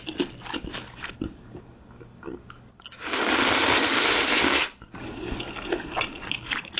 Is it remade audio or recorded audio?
recorded